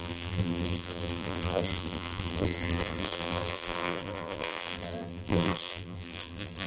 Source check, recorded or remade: remade